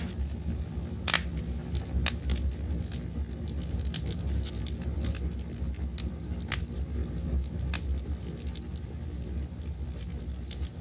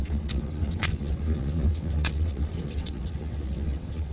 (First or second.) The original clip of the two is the first